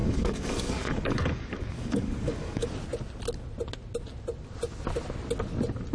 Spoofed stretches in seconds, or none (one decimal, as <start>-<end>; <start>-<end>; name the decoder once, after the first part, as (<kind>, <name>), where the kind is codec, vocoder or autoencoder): 0.0-2.7 (codec, DAC)